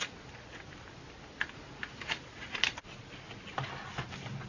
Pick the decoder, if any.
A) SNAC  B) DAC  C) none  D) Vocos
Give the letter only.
C